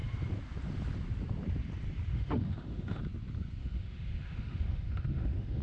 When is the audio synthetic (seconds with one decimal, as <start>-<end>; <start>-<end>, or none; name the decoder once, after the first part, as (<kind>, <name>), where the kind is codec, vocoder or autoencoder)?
2.1-3.0 (autoencoder, DAC-VAE); 3.6-5.6